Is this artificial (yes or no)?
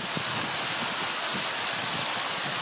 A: no